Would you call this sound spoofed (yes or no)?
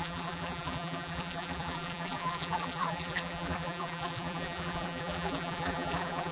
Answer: yes